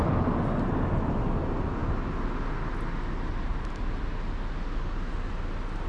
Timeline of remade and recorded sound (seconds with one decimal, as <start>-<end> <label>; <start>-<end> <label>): 0.0-5.9 recorded